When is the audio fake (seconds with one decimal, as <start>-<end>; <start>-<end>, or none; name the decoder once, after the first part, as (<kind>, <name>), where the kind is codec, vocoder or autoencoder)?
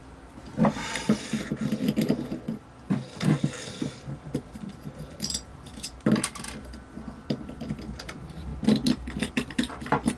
none